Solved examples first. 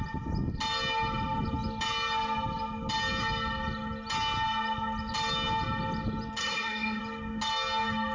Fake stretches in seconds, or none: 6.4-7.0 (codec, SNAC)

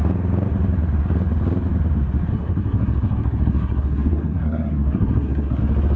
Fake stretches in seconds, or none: 2.3-5.6 (codec, SNAC)